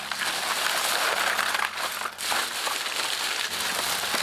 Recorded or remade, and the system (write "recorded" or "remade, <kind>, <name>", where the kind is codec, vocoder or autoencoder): recorded